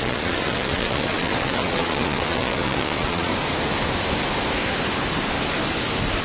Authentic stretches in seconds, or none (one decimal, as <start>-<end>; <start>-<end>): 3.3-6.2